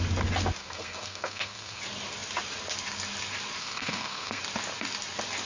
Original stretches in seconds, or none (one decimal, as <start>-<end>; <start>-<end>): 0.0-0.6; 1.8-3.6; 4.4-5.5